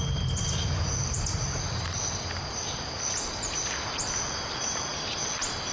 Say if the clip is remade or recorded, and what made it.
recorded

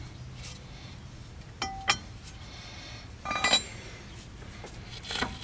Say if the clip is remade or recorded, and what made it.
recorded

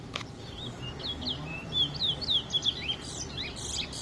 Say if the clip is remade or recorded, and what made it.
recorded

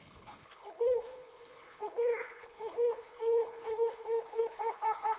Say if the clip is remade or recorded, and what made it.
remade, codec, HILCodec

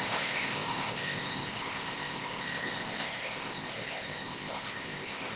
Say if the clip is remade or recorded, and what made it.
remade, codec, ZipCodec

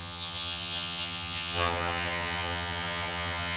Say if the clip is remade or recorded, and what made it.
remade, vocoder, HiFi-GAN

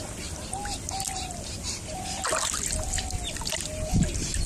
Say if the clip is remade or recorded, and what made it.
recorded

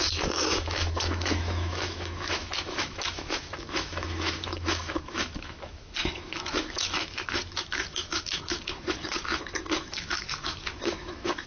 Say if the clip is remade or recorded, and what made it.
remade, autoencoder, DAC-VAE